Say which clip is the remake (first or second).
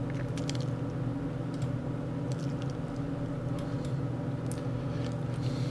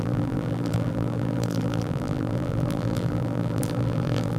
second